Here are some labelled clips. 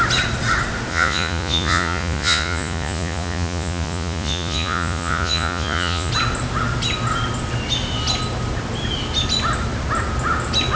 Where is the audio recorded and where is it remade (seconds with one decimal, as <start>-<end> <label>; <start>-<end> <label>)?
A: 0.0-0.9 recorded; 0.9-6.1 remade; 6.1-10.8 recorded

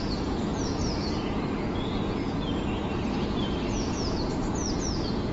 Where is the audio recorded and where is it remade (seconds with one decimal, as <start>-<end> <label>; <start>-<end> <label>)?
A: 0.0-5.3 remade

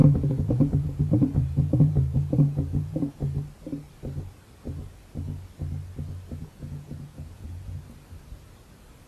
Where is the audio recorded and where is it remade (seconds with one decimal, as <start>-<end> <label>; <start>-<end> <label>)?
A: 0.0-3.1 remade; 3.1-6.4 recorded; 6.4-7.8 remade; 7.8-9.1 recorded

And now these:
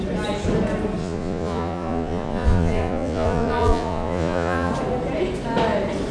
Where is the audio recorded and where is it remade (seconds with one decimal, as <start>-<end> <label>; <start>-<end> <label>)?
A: 0.0-1.0 recorded; 1.0-4.7 remade; 4.7-6.1 recorded

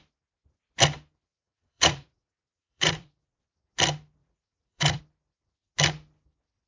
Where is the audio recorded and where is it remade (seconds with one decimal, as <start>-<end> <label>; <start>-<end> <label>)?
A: 0.0-1.3 recorded; 1.3-3.4 remade; 3.4-4.2 recorded; 4.2-5.0 remade; 5.0-6.7 recorded

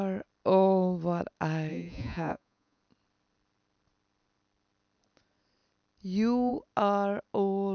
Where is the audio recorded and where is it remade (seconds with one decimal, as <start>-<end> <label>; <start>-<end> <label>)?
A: 0.0-1.7 recorded; 1.7-2.8 remade; 2.8-7.7 recorded

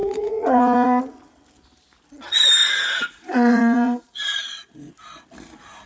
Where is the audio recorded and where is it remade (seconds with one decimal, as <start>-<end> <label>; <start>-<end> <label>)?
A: 0.0-1.0 remade; 1.0-2.6 recorded; 2.6-4.9 remade; 4.9-5.9 recorded

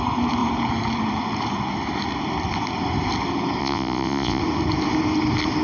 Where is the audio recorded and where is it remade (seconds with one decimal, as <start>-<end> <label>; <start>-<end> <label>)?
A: 0.0-3.6 recorded; 3.6-4.4 remade; 4.4-5.6 recorded